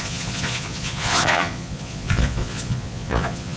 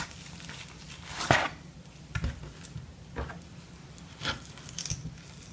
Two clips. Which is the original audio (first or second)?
second